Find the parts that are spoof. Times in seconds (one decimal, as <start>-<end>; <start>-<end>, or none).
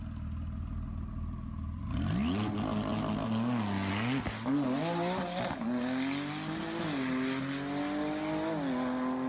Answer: none